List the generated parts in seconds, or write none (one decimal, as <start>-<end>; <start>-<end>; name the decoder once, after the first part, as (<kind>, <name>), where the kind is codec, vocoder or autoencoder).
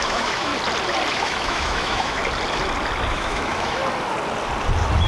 0.0-0.5 (autoencoder, DAC-VAE); 1.1-2.2; 3.1-3.8